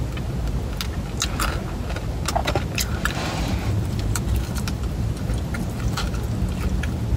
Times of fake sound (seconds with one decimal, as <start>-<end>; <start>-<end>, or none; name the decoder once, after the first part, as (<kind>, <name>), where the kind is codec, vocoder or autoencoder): 2.4-5.8 (vocoder, BigVGAN v2)